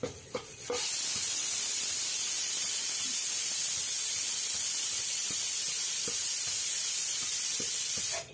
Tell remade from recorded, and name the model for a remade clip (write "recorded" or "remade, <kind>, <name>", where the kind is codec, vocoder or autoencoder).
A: recorded